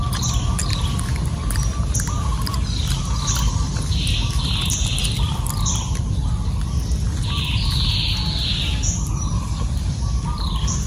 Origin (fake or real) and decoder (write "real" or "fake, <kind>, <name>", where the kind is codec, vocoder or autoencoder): real